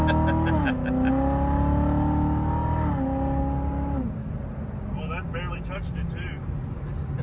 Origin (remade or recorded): recorded